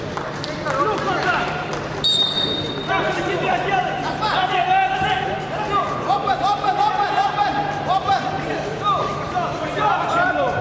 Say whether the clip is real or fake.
fake